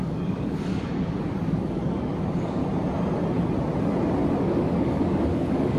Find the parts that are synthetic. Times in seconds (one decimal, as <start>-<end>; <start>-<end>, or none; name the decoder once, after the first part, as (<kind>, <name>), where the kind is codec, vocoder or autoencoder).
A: 0.0-2.6 (codec, DAC); 4.4-5.8

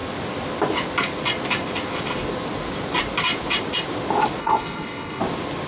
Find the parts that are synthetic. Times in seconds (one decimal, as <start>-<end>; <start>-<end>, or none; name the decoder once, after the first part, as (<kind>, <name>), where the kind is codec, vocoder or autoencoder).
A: 4.4-5.2 (codec, HILCodec)

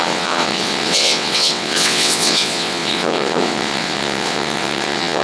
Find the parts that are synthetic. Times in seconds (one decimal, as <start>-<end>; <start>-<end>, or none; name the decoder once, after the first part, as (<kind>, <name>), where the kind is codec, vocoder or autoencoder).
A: 0.0-5.2 (vocoder, WaveNeXt)

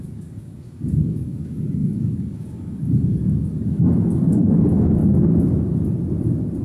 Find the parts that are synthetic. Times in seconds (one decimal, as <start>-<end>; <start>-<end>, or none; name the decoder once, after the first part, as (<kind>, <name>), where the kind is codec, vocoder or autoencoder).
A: 0.0-5.0 (codec, DAC)